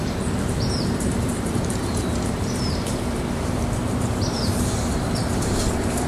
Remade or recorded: remade